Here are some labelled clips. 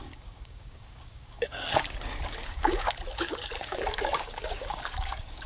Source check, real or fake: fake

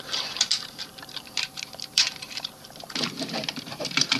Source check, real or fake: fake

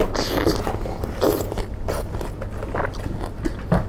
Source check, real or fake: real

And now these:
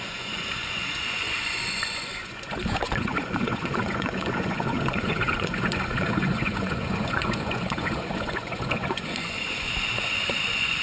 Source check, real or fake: fake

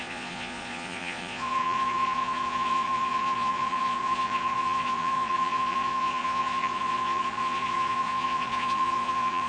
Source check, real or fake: fake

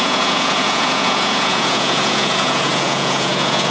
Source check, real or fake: fake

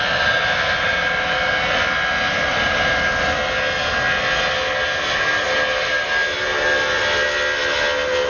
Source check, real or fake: real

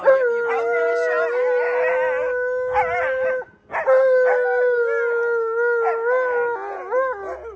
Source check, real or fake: real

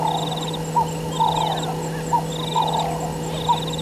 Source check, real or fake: real